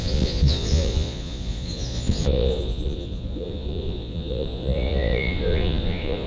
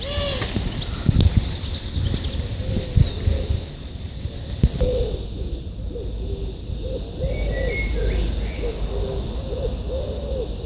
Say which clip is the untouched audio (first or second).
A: second